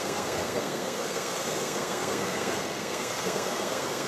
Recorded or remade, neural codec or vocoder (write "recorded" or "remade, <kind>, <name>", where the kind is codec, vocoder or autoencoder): remade, codec, SNAC